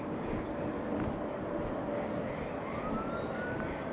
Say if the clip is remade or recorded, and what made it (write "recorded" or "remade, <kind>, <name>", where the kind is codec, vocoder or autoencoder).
recorded